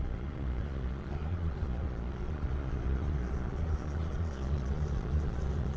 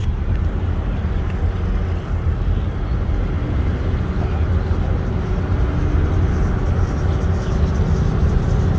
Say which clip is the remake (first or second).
first